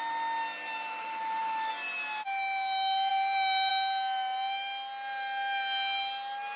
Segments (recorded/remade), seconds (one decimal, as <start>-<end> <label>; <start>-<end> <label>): 0.0-1.0 recorded; 1.0-1.7 remade; 1.7-6.6 recorded